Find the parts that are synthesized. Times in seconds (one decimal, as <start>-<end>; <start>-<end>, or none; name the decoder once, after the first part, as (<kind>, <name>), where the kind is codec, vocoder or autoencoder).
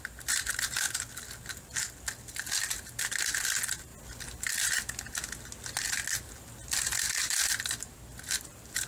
none